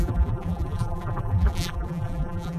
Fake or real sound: fake